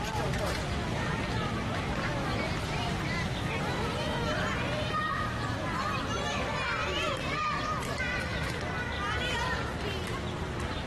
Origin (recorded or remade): remade